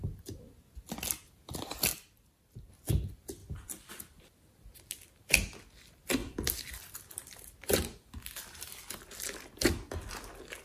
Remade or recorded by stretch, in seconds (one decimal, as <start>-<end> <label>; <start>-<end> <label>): 0.0-1.9 recorded; 1.9-2.7 remade; 2.7-3.4 recorded; 3.4-3.9 remade; 3.9-6.2 recorded; 6.2-8.7 remade; 8.7-10.6 recorded